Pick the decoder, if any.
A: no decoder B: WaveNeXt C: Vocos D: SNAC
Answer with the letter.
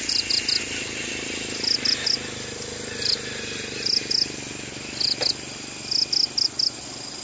A